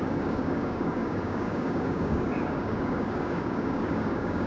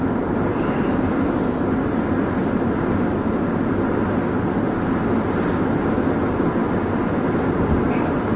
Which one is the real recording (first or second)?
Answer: second